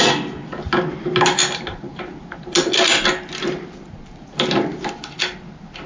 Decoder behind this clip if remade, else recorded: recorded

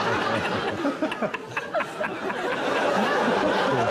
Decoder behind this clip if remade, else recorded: recorded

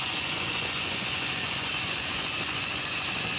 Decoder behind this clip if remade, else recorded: remade, vocoder, Vocos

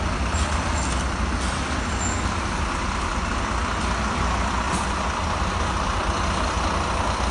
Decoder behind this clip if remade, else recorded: recorded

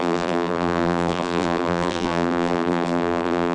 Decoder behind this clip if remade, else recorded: remade, vocoder, BigVGAN v2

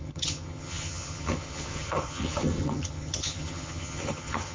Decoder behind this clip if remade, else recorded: remade, vocoder, HiFi-GAN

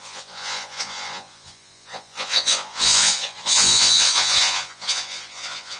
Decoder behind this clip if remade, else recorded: remade, vocoder, Vocos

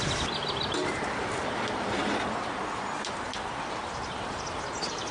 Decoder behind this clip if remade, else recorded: recorded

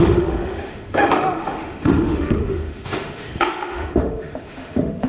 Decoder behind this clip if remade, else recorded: remade, autoencoder, DAC-VAE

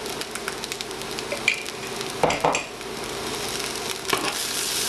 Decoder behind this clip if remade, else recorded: recorded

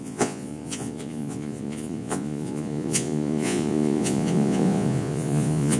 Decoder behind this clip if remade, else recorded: remade, vocoder, Vocos